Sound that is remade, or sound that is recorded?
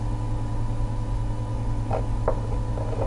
recorded